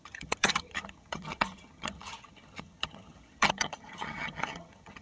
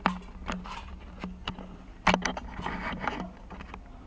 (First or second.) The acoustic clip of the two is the second